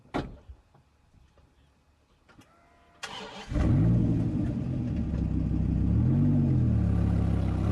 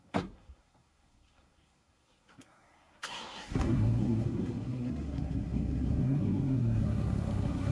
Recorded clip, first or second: first